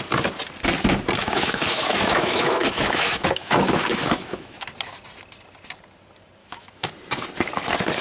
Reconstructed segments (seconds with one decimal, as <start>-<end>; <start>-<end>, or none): 1.2-4.6; 6.4-6.9